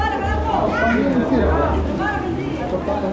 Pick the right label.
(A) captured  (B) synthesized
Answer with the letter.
A